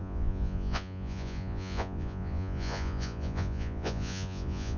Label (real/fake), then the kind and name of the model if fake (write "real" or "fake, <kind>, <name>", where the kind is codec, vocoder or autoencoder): fake, vocoder, Vocos